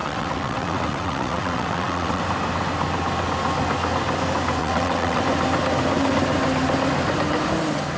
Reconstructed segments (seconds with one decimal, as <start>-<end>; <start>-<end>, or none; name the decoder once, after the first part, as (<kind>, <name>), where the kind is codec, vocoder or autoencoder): 0.0-2.2 (vocoder, WaveNeXt); 4.6-5.2